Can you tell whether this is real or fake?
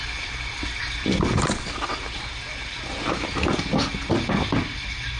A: real